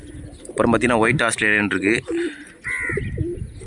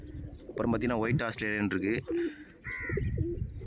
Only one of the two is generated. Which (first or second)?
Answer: first